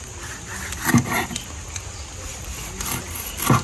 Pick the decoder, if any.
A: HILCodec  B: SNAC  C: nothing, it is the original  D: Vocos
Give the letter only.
C